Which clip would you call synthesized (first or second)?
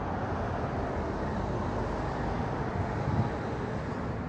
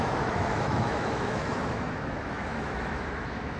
second